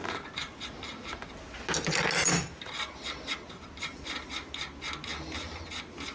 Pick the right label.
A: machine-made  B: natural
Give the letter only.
B